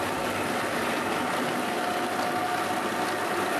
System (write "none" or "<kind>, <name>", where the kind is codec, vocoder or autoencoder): none